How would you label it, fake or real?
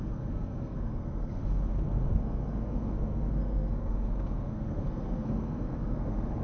fake